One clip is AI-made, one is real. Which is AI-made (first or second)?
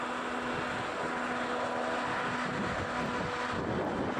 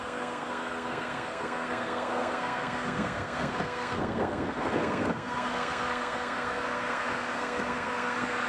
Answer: second